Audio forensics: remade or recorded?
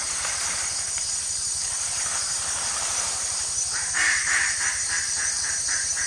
remade